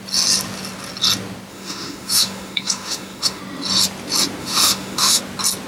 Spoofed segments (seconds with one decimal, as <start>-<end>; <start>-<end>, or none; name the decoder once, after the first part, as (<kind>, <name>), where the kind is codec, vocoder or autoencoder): 1.5-3.4 (autoencoder, DAC-VAE); 4.4-5.2